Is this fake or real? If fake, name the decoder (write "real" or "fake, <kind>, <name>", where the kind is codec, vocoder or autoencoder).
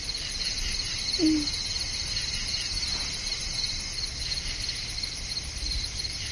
real